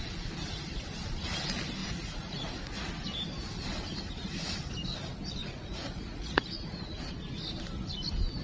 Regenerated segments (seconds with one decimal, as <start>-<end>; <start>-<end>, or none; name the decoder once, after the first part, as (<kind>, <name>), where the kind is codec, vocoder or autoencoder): 1.8-2.9 (vocoder, Vocos); 5.4-6.9